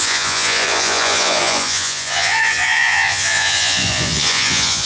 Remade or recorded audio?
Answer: remade